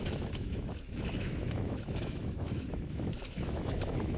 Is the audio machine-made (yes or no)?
yes